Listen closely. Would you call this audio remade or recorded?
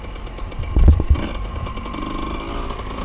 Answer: recorded